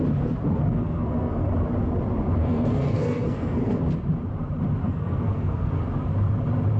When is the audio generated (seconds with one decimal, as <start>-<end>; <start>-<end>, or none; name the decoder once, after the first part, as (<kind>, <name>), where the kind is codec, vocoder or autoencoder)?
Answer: 0.7-1.5 (codec, SNAC); 2.4-3.8; 4.8-5.7